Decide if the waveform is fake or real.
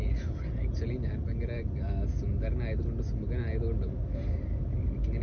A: real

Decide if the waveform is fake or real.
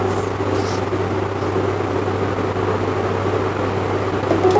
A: real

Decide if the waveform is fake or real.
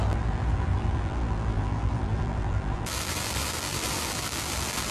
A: fake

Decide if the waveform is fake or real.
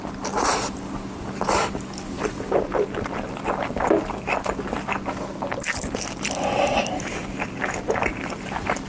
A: fake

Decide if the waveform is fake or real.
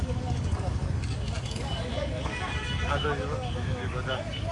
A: fake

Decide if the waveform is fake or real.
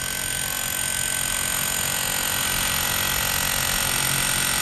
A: real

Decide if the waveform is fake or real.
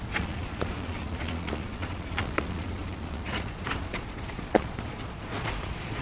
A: fake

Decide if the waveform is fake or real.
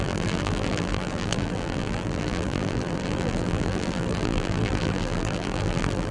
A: fake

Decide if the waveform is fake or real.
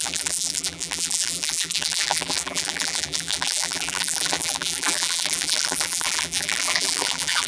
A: fake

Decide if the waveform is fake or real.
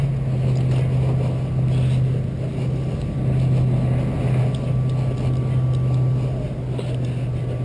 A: real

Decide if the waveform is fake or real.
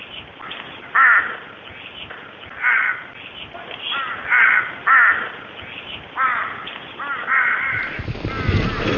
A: real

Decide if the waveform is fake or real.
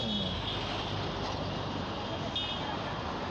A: real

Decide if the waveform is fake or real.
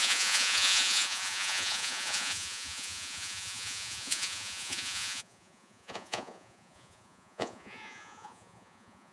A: fake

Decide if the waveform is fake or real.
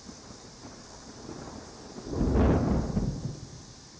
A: real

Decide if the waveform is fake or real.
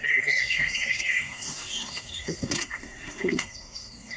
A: fake